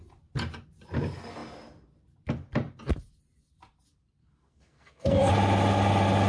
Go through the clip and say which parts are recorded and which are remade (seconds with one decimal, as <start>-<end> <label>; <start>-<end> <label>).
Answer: 0.0-4.2 recorded; 4.2-5.3 remade; 5.3-6.3 recorded